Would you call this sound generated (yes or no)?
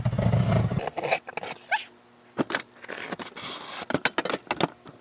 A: no